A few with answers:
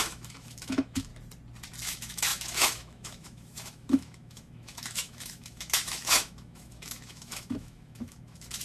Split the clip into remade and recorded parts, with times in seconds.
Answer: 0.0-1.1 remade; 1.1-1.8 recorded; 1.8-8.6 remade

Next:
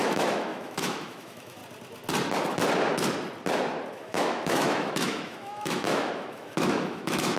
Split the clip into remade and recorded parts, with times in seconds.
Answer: 0.0-1.6 remade; 1.6-3.9 recorded; 3.9-7.4 remade

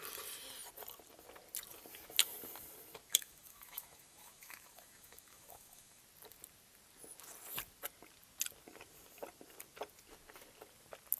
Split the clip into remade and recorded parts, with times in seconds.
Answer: 0.0-3.1 recorded; 3.1-6.0 remade; 6.0-11.2 recorded